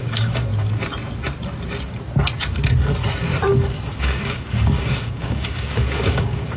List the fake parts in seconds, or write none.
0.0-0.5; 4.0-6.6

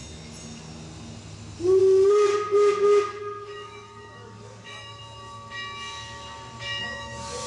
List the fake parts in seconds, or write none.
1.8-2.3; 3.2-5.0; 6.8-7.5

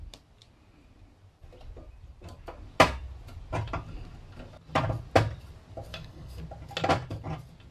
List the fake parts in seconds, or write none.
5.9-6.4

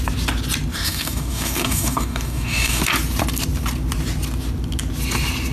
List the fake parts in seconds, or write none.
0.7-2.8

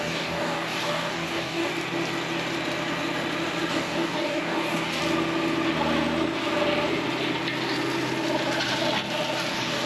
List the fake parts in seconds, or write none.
0.0-1.7; 3.7-5.0; 9.5-9.9